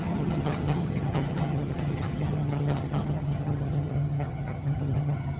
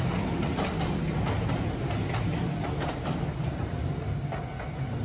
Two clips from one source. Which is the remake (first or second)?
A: first